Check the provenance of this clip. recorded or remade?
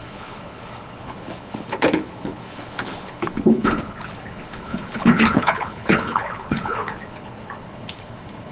remade